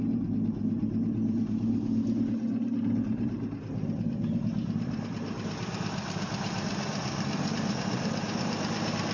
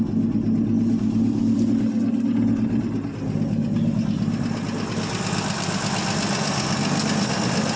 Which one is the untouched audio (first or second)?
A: second